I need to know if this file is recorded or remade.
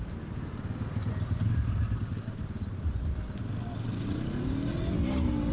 recorded